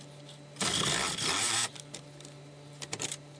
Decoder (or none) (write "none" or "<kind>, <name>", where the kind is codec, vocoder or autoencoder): none